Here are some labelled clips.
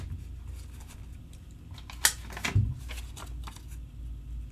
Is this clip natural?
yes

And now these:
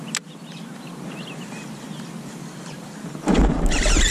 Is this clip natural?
yes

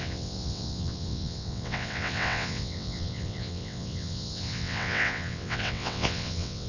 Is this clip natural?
no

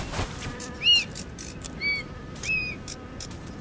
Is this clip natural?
yes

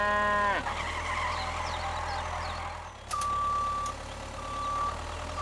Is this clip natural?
yes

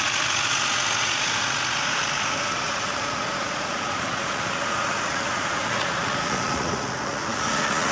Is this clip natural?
no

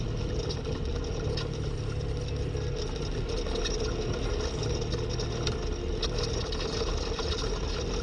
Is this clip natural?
yes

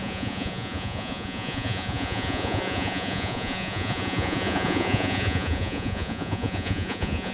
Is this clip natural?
no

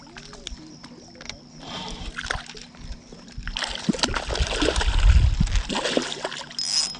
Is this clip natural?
yes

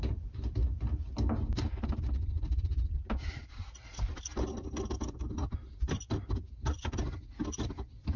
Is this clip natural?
yes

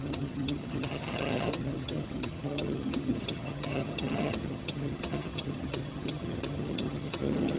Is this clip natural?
no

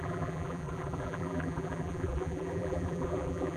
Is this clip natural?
no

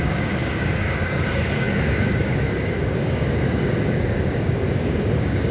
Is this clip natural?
no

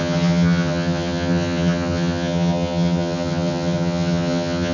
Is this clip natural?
no